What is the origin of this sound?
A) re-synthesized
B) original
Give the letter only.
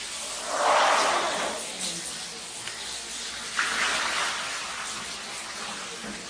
B